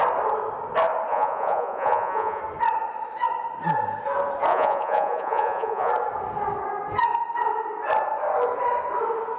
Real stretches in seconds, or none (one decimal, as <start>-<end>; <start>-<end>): 0.0-1.1; 2.4-4.5; 5.9-9.4